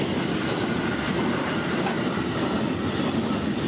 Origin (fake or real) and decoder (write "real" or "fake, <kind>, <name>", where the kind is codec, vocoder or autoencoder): real